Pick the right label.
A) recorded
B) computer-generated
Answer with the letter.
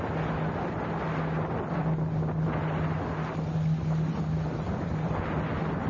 A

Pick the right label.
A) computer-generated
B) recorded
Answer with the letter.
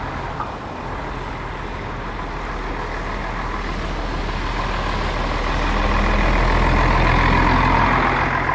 B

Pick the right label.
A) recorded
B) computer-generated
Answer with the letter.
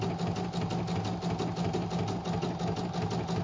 A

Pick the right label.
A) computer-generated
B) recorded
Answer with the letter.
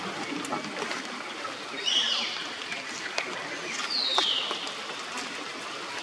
B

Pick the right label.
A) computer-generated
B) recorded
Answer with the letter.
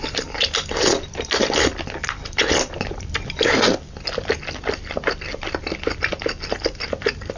B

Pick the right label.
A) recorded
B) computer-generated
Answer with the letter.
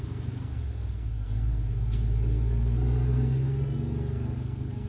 B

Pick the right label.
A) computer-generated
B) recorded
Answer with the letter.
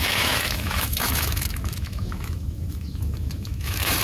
A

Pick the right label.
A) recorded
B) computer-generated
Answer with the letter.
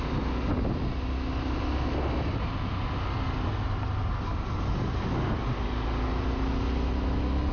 A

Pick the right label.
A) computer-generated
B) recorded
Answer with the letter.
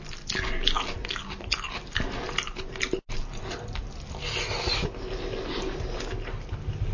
B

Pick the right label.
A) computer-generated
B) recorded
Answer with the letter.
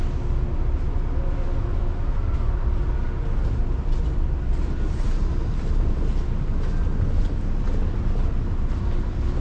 B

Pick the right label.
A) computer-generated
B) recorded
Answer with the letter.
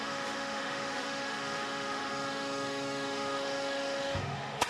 A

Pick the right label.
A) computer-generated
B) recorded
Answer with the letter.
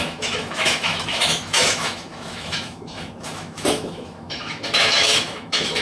A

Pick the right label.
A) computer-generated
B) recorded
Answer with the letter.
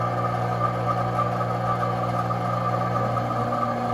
B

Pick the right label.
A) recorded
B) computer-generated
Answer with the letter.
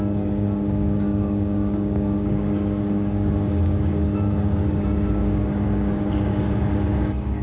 B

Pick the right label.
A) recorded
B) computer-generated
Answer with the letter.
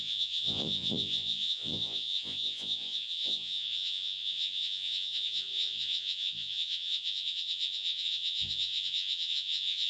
B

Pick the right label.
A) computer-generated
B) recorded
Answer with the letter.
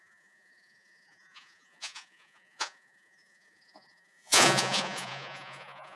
A